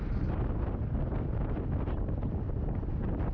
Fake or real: real